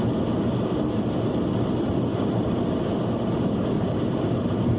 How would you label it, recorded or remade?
recorded